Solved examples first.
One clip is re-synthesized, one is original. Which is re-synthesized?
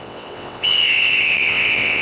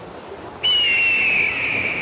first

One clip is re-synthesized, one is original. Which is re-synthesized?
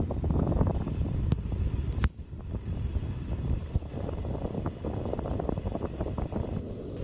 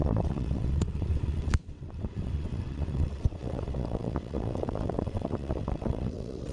second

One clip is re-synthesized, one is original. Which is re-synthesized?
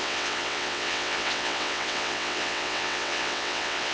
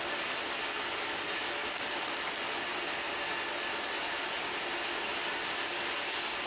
first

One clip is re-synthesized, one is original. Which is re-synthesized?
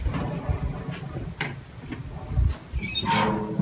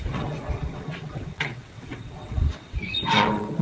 second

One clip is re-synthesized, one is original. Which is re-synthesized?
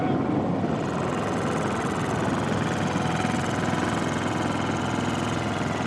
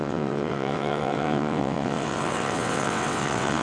second